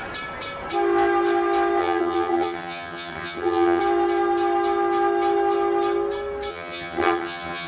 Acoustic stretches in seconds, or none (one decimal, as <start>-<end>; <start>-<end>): 0.0-1.8; 3.8-6.5